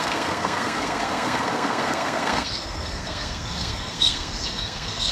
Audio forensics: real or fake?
fake